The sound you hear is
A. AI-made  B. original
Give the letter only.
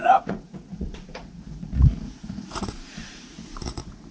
A